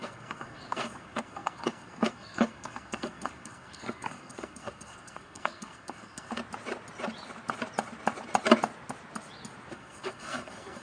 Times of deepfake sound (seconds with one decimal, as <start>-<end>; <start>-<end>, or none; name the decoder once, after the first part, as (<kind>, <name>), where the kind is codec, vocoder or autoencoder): 0.0-6.4 (codec, SNAC); 9.7-10.8